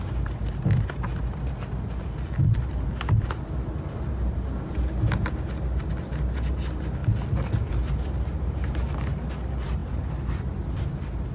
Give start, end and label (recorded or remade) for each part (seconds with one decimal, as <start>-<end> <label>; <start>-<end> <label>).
0.0-11.3 recorded